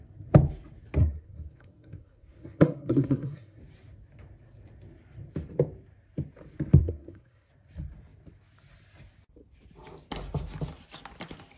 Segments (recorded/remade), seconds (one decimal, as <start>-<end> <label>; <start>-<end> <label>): 0.0-1.0 recorded; 1.0-3.6 remade; 3.6-6.8 recorded; 6.8-7.5 remade; 7.5-11.6 recorded